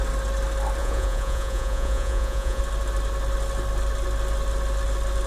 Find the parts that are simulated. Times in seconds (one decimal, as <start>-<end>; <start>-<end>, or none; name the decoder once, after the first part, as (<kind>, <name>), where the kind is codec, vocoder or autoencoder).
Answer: 0.8-2.6 (vocoder, Vocos)